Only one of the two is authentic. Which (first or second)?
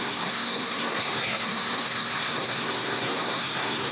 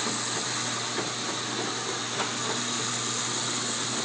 second